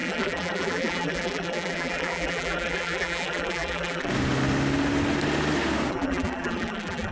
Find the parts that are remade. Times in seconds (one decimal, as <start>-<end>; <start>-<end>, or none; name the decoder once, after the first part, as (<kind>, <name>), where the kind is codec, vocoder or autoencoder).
0.0-4.1 (vocoder, BigVGAN v2); 5.9-7.1